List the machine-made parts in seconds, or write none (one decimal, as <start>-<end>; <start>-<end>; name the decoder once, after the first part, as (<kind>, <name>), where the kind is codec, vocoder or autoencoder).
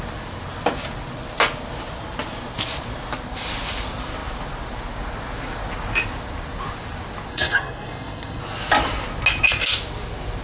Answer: 7.3-8.4 (codec, SNAC)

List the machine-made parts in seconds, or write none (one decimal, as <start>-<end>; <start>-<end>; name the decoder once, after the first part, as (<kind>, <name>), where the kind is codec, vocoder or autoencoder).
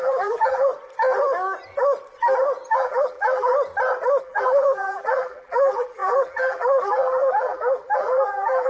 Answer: 0.0-0.7 (vocoder, BigVGAN v2); 2.7-3.5; 4.2-8.7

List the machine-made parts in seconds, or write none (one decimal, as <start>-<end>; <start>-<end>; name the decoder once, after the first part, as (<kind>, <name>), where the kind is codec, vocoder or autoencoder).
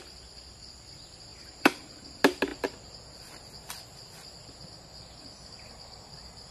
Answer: 1.3-2.1 (vocoder, BigVGAN v2)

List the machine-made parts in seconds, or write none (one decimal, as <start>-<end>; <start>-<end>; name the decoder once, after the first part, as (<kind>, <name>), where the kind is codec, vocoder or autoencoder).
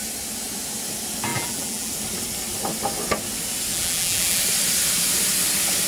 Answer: 1.3-1.9 (vocoder, BigVGAN v2); 3.7-4.4